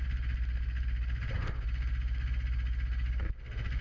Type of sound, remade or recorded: recorded